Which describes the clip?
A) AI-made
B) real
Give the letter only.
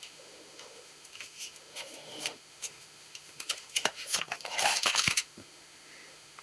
A